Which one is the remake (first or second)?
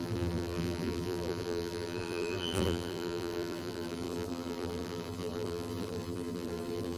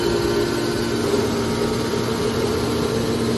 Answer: first